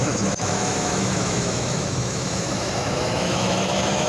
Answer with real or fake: fake